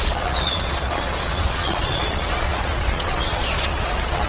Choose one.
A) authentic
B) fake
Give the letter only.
B